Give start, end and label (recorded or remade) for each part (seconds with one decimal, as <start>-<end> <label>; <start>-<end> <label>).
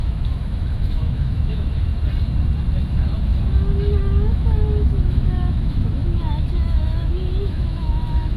0.0-1.9 remade; 1.9-2.9 recorded; 2.9-3.3 remade; 3.3-4.0 recorded; 4.0-8.4 remade